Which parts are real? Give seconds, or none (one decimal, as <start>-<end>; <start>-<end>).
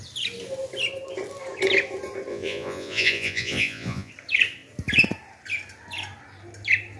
0.0-2.3; 4.1-7.0